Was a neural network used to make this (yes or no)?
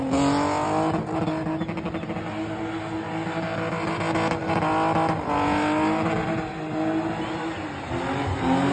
no